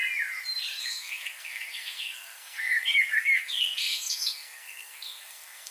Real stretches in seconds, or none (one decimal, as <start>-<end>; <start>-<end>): 0.0-0.8